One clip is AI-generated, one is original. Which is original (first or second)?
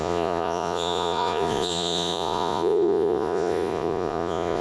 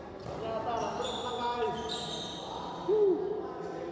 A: second